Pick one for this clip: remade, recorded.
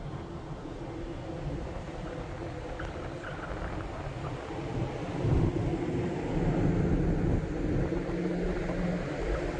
recorded